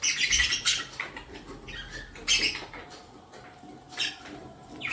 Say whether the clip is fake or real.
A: real